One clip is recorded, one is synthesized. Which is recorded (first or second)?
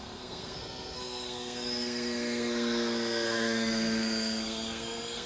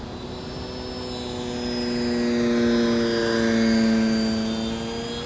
second